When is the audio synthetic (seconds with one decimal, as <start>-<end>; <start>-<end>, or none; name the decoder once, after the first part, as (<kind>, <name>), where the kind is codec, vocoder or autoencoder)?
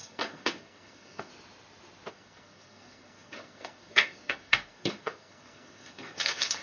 0.0-1.3 (codec, SNAC); 2.1-6.6